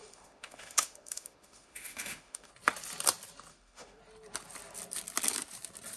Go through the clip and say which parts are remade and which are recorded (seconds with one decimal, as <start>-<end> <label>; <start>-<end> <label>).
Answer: 0.0-2.5 remade; 2.5-3.5 recorded; 3.5-4.0 remade; 4.0-6.0 recorded